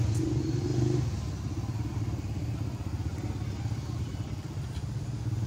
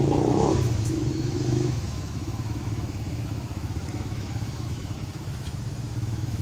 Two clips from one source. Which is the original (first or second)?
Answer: first